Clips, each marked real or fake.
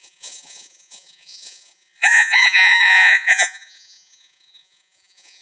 fake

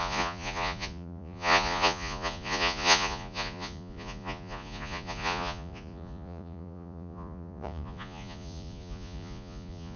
fake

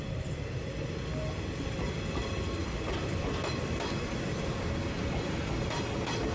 real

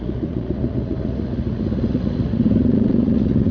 fake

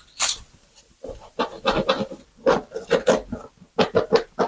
real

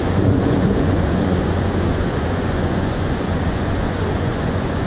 fake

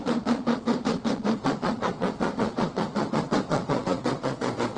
fake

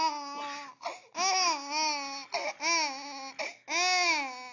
real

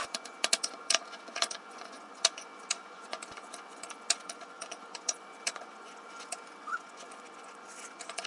fake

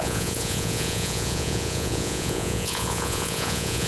fake